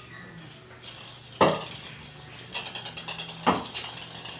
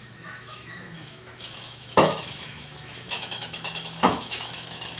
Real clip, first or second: first